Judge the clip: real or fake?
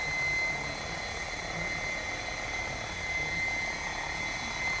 real